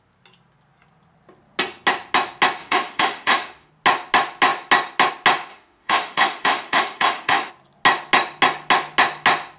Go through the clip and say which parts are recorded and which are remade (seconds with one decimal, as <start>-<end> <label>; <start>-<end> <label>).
0.0-2.6 recorded; 2.6-3.7 remade; 3.7-5.5 recorded; 5.5-7.5 remade; 7.5-9.6 recorded